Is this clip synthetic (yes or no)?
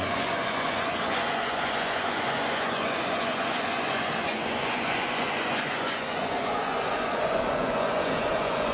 yes